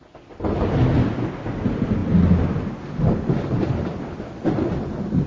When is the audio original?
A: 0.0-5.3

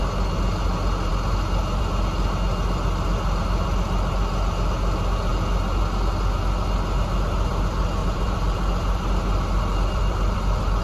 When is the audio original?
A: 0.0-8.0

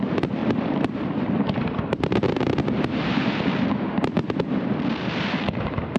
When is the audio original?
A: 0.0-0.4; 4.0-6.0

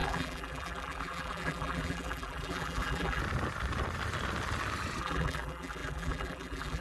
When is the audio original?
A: 3.2-5.0